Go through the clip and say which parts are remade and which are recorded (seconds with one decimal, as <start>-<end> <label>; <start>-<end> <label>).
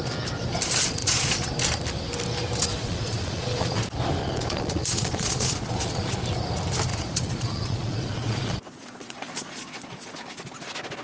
0.0-1.0 recorded; 1.0-1.5 remade; 1.5-2.7 recorded; 2.7-3.8 remade; 3.8-4.2 recorded; 4.2-6.2 remade; 6.2-6.9 recorded; 6.9-10.1 remade; 10.1-11.0 recorded